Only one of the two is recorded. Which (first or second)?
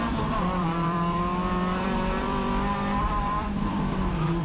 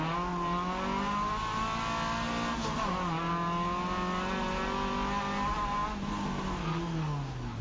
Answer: second